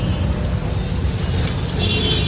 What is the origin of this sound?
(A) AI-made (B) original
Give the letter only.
B